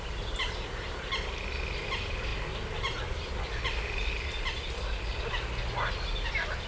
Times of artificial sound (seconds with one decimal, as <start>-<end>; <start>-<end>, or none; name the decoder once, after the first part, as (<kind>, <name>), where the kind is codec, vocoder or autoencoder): none